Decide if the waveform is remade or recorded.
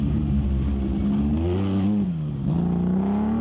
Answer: recorded